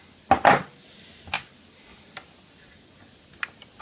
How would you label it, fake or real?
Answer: real